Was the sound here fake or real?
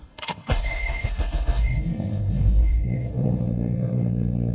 fake